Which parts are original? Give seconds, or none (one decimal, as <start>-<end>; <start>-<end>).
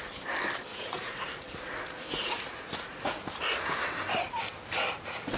0.0-0.7; 3.4-5.4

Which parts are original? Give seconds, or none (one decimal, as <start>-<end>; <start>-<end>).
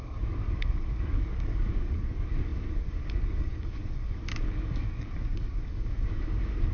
none